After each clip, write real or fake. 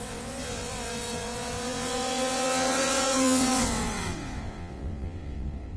fake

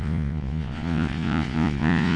fake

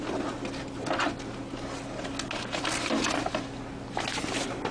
real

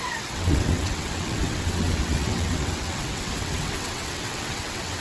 fake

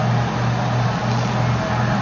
real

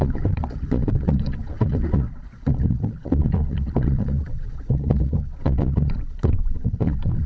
fake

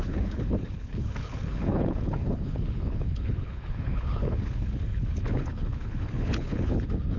fake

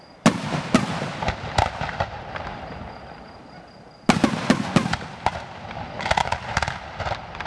real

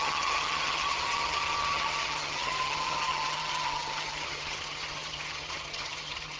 fake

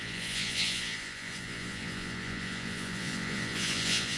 fake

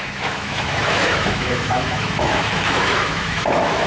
fake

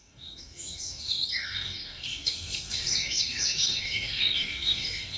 fake